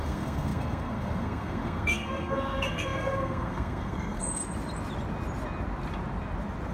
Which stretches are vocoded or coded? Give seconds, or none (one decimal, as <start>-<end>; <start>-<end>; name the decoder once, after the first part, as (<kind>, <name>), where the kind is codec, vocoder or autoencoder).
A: 0.0-4.4 (codec, SNAC)